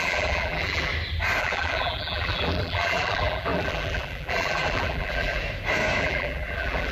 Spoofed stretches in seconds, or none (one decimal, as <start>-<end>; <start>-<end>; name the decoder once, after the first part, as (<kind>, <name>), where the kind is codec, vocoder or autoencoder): 0.0-0.9 (vocoder, BigVGAN v2); 1.4-5.4; 6.0-6.9